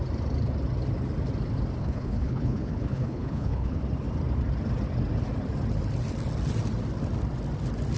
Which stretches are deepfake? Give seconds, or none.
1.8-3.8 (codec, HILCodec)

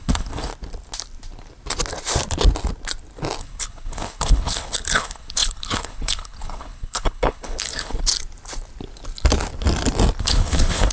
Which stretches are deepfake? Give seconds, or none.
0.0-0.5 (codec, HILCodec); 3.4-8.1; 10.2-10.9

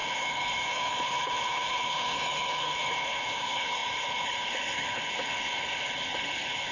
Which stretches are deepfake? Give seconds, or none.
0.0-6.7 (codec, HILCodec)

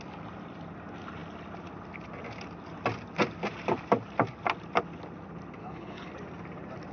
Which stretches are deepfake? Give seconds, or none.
5.6-6.1 (codec, HILCodec)